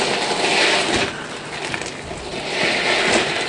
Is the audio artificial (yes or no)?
yes